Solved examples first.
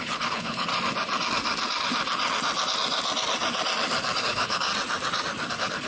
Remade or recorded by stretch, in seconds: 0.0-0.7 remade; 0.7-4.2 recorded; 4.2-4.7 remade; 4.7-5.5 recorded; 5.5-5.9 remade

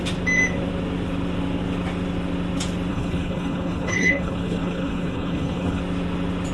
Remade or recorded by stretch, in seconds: 0.0-2.9 recorded; 2.9-5.8 remade; 5.8-6.5 recorded

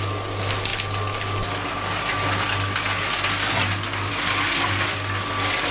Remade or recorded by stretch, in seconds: 0.0-5.7 recorded

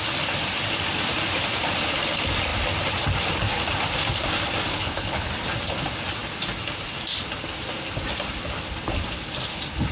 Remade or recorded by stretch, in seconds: 0.0-4.7 recorded; 4.7-5.3 remade; 5.3-9.9 recorded

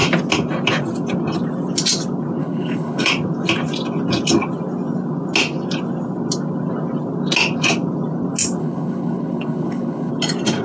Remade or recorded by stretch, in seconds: 0.0-2.4 recorded; 2.4-3.1 remade; 3.1-8.6 recorded; 8.6-10.1 remade; 10.1-10.6 recorded

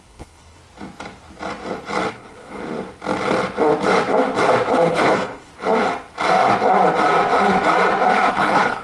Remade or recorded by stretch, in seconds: 0.0-0.6 remade; 0.6-2.1 recorded; 2.1-2.6 remade; 2.6-4.9 recorded; 4.9-5.5 remade; 5.5-8.3 recorded; 8.3-8.8 remade